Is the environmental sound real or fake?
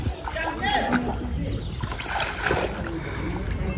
real